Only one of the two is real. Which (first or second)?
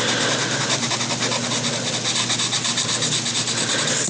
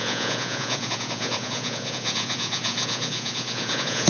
first